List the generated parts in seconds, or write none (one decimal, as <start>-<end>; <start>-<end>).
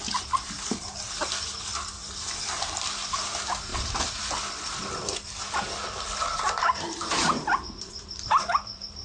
2.0-2.7; 3.7-4.2; 6.3-9.0